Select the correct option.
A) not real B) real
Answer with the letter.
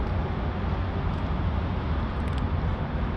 B